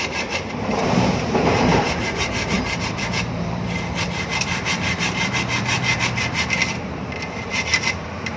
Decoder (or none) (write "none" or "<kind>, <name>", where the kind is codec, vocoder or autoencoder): vocoder, BigVGAN v2